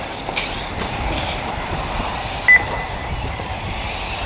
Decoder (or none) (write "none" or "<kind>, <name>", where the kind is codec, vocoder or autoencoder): none